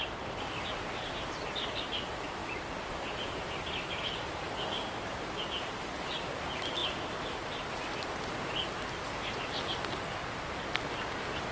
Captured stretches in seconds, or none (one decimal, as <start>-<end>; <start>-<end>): 0.0-11.5

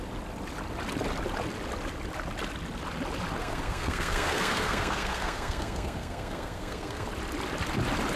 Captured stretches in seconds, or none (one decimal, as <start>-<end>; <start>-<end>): 0.0-3.4; 7.1-8.2